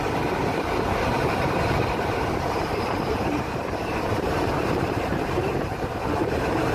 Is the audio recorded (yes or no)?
no